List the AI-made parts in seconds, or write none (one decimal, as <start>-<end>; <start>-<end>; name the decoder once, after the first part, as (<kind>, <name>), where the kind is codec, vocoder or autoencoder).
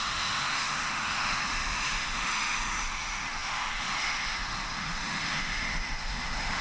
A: 0.0-6.6 (autoencoder, DAC-VAE)